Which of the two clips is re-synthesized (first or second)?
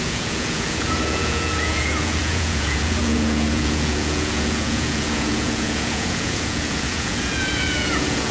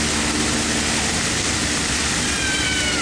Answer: first